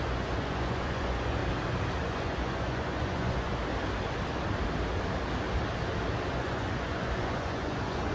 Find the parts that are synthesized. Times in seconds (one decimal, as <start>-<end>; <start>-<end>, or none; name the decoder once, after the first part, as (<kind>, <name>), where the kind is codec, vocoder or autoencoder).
0.0-1.4 (vocoder, Vocos); 2.0-3.6; 6.3-8.1